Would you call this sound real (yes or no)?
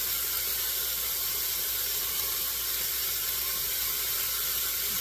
yes